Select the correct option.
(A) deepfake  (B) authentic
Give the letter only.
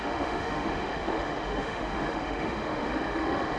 A